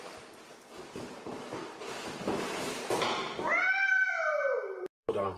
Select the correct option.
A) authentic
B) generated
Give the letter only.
B